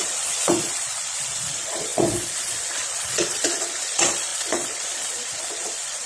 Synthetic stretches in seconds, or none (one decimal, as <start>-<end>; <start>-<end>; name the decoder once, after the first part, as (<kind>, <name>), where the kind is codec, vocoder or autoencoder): 0.0-6.1 (vocoder, Vocos)